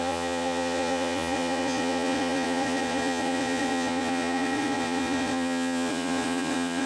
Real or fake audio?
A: fake